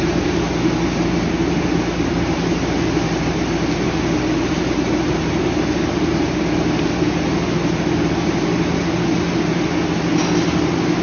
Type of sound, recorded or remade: recorded